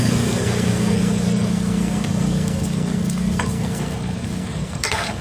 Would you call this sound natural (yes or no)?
no